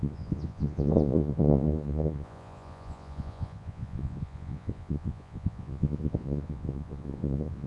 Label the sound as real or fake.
fake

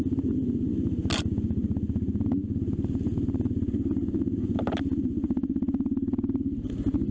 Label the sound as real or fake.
real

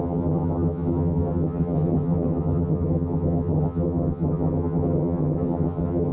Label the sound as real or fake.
fake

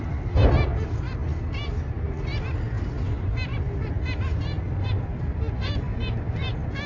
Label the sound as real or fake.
real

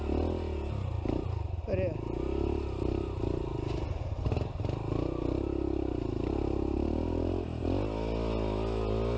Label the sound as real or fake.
real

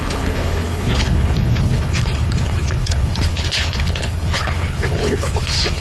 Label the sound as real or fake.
fake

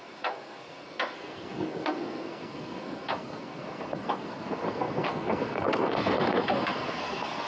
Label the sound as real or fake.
fake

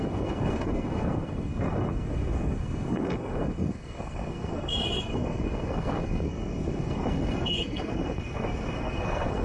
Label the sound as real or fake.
fake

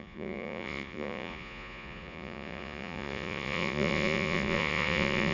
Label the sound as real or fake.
fake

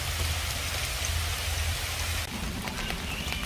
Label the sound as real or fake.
real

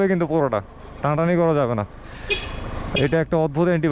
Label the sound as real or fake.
real